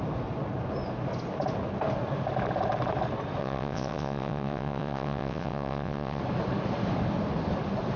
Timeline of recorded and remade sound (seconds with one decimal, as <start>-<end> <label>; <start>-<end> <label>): 0.0-3.4 recorded; 3.4-6.2 remade; 6.2-8.0 recorded